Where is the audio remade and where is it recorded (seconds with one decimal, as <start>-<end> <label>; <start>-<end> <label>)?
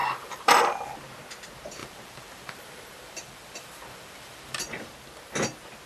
0.0-0.6 remade; 0.6-1.8 recorded; 1.8-4.6 remade; 4.6-5.9 recorded